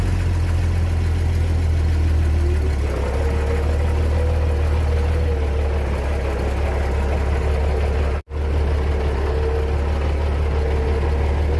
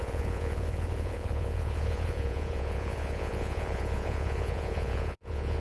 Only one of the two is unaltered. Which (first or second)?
first